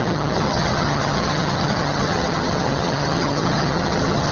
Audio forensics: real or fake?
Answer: fake